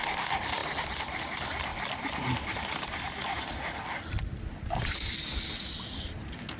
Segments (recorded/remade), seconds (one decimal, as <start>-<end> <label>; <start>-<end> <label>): 0.0-6.6 recorded